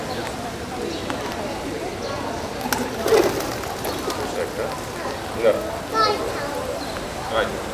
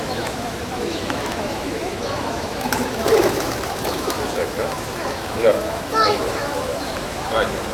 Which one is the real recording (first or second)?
first